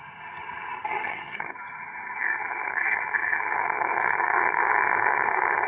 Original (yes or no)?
no